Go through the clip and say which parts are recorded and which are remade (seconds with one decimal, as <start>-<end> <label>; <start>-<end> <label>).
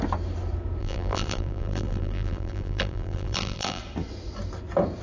0.0-0.8 recorded; 0.8-3.8 remade; 3.8-5.0 recorded